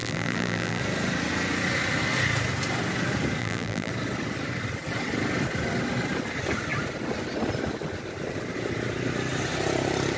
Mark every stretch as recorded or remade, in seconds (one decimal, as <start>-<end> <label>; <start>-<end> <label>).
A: 0.0-0.8 remade; 0.8-3.4 recorded; 3.4-3.9 remade; 3.9-10.2 recorded